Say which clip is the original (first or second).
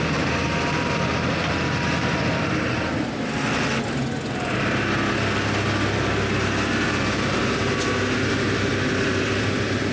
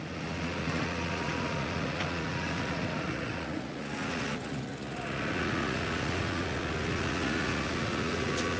first